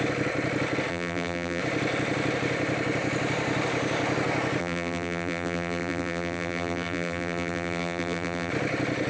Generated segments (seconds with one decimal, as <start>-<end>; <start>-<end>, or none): 0.9-1.6; 4.6-8.5